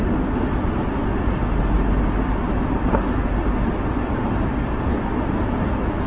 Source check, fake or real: real